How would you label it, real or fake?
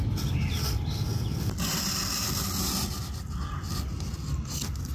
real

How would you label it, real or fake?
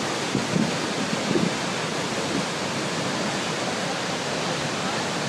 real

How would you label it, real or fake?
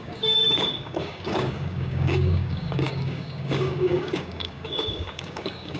fake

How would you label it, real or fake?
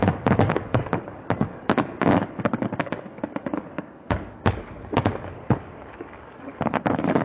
fake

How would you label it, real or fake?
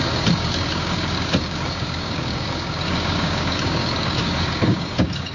fake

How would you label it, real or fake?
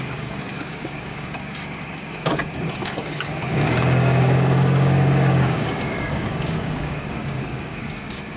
fake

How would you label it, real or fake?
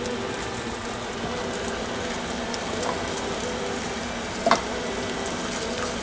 real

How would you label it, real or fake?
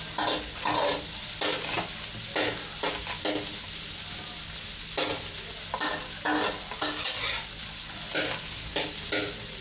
real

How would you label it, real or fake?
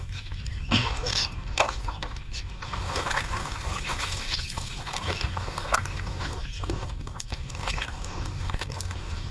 fake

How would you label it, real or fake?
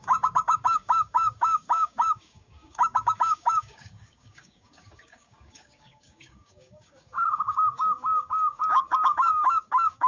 fake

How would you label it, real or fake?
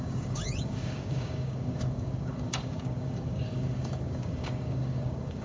fake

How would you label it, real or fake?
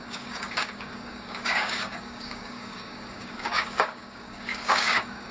fake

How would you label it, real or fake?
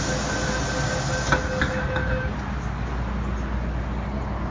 real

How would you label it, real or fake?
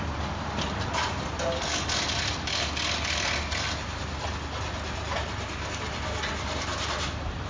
real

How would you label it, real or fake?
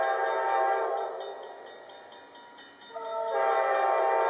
real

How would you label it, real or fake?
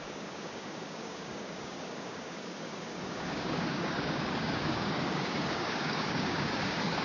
fake